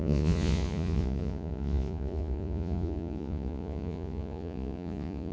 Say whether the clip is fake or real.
fake